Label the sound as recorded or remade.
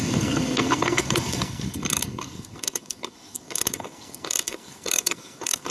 remade